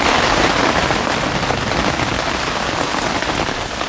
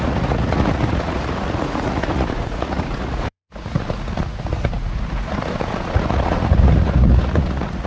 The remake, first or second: second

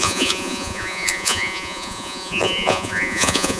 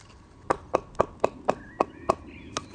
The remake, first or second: first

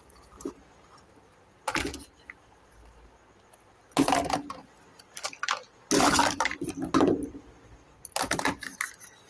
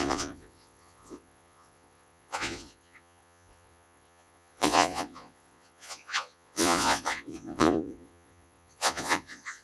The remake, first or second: second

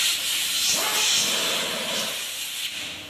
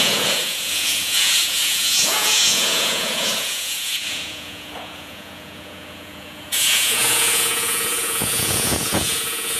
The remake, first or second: second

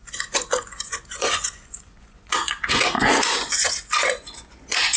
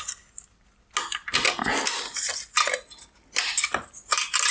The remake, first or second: first